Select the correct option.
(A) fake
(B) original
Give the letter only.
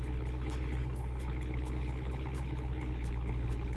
A